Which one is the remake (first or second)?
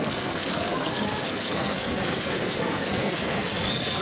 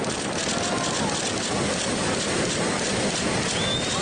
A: first